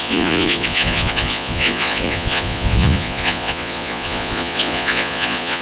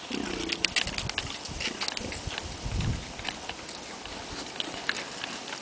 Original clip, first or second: second